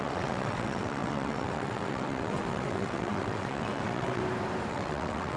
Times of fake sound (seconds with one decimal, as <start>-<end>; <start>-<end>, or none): 0.0-4.2; 4.7-5.4